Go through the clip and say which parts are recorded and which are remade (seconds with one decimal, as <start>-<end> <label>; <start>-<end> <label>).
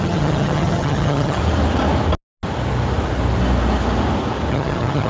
0.0-1.4 remade; 1.4-4.5 recorded; 4.5-5.1 remade